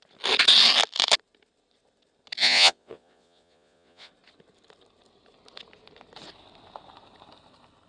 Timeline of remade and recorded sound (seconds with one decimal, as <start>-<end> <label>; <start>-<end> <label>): 0.0-2.4 recorded; 2.4-4.1 remade; 4.1-7.9 recorded